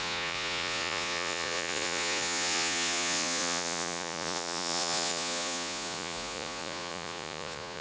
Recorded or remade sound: remade